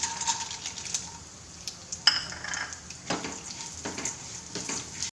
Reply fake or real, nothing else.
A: real